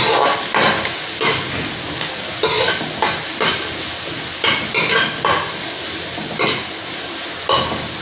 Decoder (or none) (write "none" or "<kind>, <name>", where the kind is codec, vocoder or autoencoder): none